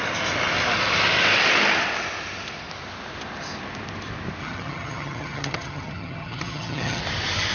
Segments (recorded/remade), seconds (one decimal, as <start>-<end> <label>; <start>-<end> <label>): 0.0-4.4 recorded; 4.4-7.0 remade; 7.0-7.5 recorded